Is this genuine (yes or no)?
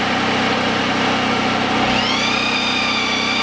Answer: yes